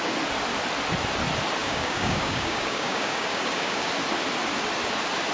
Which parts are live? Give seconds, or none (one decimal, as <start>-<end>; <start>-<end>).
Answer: 0.0-1.6; 3.9-5.3